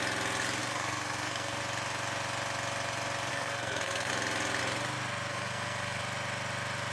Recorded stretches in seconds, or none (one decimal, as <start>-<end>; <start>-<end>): 0.0-0.6; 1.6-3.3; 4.1-5.3; 6.0-6.9